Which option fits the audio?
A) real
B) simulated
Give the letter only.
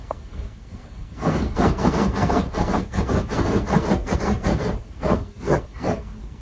B